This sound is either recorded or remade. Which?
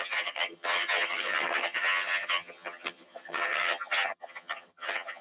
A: remade